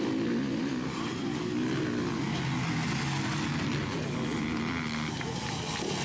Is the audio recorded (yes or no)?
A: yes